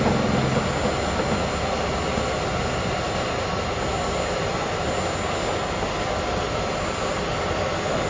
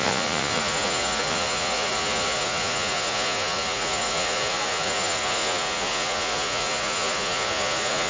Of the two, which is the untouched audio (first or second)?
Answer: first